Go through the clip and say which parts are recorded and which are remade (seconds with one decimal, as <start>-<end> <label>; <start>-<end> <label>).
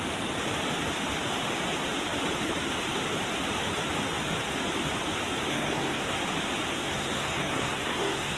0.0-5.5 recorded; 5.5-6.2 remade; 6.2-6.7 recorded; 6.7-8.4 remade